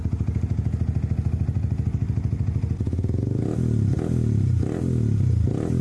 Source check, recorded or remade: recorded